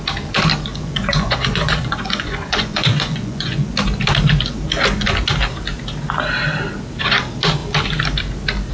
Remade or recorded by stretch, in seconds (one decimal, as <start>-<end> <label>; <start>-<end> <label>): 0.0-0.7 recorded; 0.7-3.7 remade; 3.7-8.7 recorded